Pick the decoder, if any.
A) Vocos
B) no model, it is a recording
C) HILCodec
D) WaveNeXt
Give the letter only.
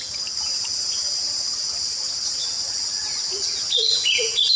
B